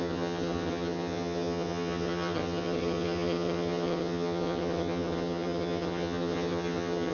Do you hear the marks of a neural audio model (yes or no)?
yes